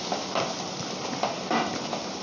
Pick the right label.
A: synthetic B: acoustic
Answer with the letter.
B